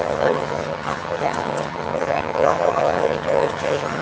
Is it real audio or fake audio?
fake